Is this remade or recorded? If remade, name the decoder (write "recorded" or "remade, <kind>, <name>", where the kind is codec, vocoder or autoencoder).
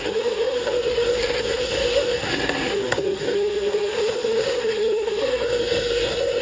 remade, codec, SNAC